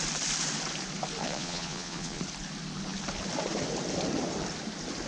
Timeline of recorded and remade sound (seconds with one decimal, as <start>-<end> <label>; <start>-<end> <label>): 0.0-1.2 recorded; 1.2-2.2 remade; 2.2-5.1 recorded